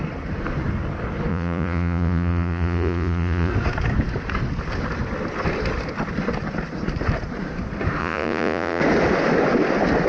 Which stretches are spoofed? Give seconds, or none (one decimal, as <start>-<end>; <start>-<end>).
1.3-3.5; 8.0-8.8